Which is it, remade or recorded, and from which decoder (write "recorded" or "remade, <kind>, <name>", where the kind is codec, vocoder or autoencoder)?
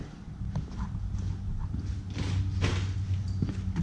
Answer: recorded